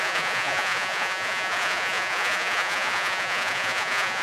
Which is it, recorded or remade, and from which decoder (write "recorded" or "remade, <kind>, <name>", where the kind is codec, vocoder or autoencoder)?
remade, vocoder, Vocos